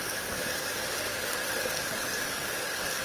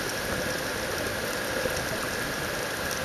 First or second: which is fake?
first